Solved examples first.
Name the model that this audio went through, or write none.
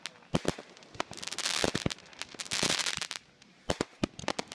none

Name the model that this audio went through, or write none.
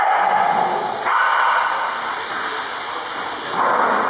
none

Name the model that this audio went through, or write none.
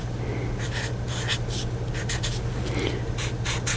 none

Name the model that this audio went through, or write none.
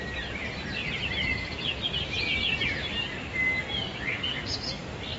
none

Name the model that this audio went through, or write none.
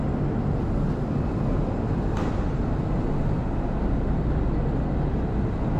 none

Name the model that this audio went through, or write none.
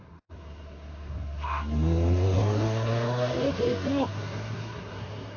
codec, SNAC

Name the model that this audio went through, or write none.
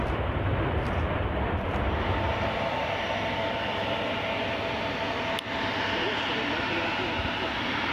none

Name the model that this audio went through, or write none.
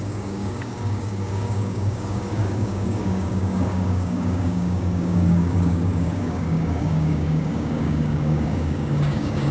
codec, DAC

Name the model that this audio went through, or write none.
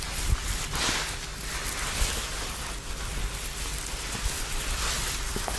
none